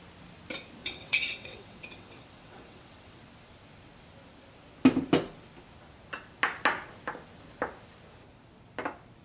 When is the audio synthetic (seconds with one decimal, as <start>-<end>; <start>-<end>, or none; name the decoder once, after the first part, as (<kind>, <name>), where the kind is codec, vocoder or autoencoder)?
0.8-3.2 (vocoder, WaveNeXt)